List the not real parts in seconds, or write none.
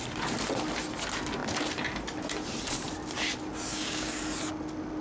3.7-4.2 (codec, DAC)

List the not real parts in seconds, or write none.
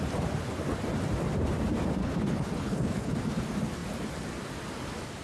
2.0-3.1 (codec, HILCodec)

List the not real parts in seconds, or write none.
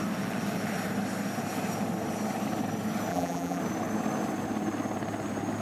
3.1-3.6 (vocoder, BigVGAN v2)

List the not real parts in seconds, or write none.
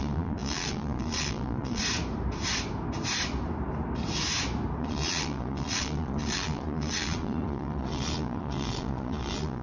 0.0-1.8 (vocoder, Vocos); 4.8-9.6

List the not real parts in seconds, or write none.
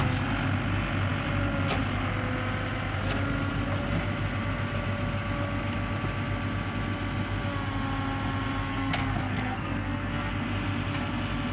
8.6-10.3 (codec, SNAC)